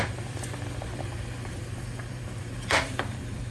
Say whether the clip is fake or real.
fake